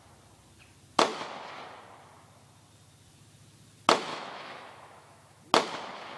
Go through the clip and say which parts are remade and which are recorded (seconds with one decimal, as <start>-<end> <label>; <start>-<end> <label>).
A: 0.0-4.1 recorded; 4.1-5.4 remade; 5.4-6.2 recorded